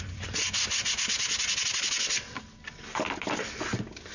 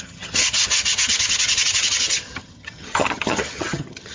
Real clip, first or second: first